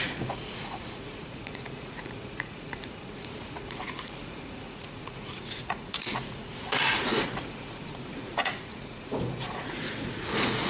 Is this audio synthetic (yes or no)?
yes